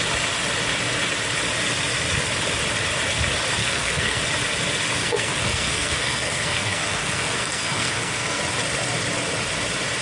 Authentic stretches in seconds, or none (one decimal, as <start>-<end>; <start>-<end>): 0.0-3.6; 4.2-5.0; 8.4-10.0